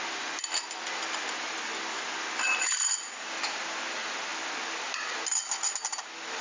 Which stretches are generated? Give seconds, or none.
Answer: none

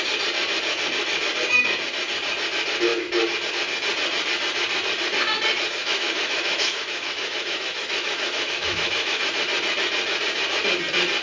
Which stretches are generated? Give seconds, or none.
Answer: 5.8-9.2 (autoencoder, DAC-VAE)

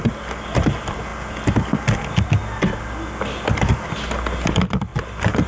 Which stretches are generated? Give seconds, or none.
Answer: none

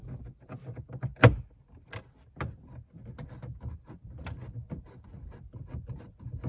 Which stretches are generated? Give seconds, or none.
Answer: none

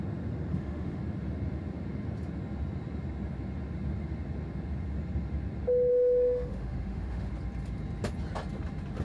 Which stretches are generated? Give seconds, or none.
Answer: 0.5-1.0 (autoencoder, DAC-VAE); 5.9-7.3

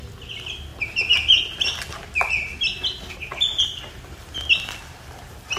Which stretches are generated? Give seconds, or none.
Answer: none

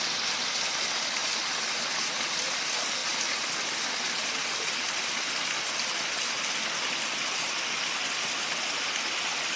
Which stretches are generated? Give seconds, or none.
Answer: none

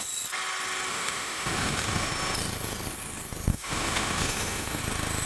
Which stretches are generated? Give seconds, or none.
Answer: 0.9-2.1 (autoencoder, DAC-VAE); 3.5-4.8